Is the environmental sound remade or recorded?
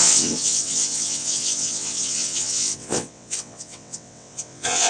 remade